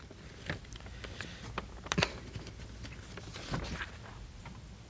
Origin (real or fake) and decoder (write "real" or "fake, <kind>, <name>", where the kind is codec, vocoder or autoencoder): real